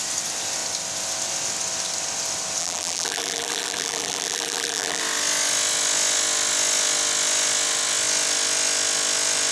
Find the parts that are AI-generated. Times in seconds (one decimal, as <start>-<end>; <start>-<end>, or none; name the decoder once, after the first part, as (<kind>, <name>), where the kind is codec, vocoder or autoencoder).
2.6-5.0 (vocoder, BigVGAN v2)